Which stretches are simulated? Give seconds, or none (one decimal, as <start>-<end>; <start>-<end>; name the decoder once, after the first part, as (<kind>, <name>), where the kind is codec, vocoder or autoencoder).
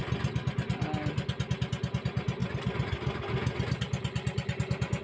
none